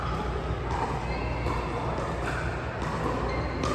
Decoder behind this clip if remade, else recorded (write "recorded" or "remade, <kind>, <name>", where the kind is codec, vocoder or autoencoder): recorded